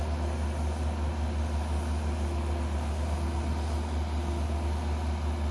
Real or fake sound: real